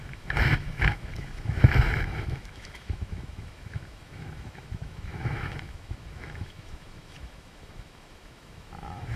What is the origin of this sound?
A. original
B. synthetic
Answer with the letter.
B